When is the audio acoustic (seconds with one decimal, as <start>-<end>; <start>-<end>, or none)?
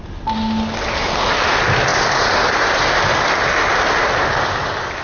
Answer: 0.0-5.0